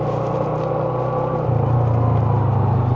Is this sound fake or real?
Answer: real